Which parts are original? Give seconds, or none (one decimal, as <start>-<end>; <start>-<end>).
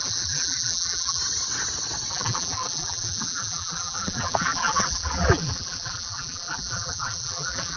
1.2-2.1